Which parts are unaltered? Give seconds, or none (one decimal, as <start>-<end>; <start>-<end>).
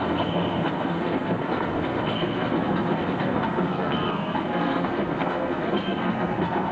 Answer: none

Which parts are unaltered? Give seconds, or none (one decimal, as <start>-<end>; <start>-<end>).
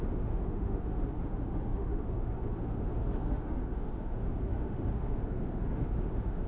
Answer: none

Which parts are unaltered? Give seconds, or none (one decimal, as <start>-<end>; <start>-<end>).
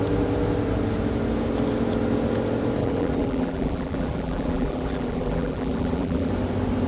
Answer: 0.0-2.8; 6.3-6.9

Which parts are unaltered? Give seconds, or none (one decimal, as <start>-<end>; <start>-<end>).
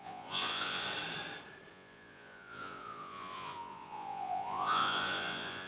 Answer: 0.9-1.7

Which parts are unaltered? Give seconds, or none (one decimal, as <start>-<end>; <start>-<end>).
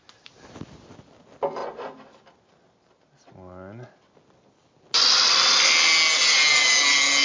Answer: 0.0-7.2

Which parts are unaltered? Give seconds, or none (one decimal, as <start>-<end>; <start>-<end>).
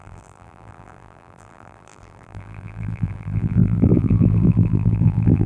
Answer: none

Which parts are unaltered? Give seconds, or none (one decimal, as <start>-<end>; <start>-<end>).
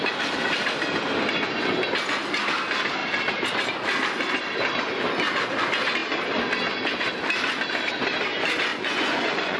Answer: 0.0-8.7